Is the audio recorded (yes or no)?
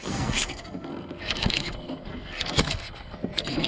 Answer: no